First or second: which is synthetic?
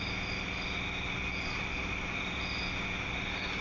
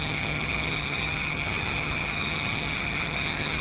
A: second